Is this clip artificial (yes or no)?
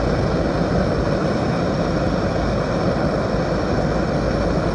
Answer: no